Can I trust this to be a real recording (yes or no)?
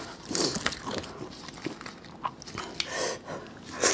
yes